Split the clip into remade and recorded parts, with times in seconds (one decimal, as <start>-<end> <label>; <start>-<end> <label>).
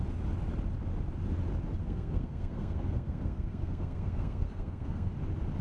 0.0-1.8 recorded; 1.8-5.1 remade; 5.1-5.6 recorded